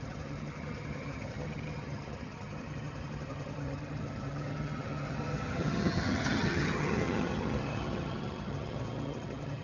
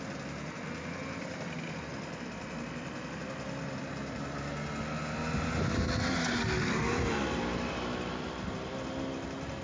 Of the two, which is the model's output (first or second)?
first